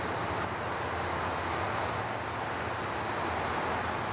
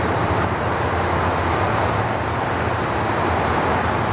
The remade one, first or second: second